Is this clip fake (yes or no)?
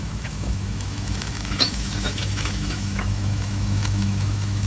yes